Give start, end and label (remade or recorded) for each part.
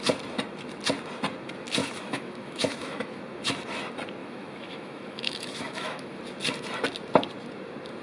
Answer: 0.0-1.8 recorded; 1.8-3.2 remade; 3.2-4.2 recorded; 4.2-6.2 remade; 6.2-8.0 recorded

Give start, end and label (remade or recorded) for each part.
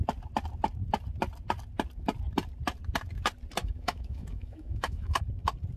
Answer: 0.0-3.6 recorded; 3.6-5.2 remade; 5.2-5.8 recorded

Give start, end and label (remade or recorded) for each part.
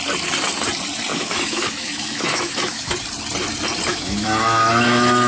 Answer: 0.0-1.1 recorded; 1.1-2.9 remade; 2.9-3.9 recorded; 3.9-5.3 remade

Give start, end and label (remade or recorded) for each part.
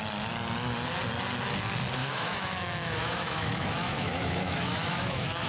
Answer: 0.0-2.0 recorded; 2.0-5.5 remade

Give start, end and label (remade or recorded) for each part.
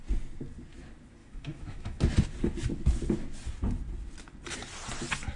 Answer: 0.0-1.2 recorded; 1.2-2.0 remade; 2.0-5.4 recorded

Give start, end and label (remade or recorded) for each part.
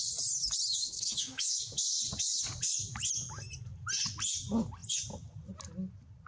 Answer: 0.0-0.8 recorded; 0.8-1.6 remade; 1.6-6.3 recorded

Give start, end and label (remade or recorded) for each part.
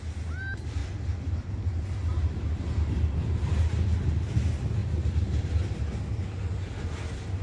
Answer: 0.0-7.4 recorded